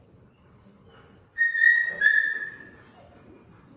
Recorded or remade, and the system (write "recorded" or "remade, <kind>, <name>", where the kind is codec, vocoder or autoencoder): recorded